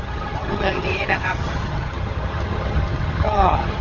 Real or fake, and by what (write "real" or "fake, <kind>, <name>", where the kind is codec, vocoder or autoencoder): fake, vocoder, HiFi-GAN